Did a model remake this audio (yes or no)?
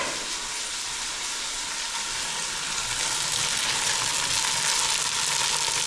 no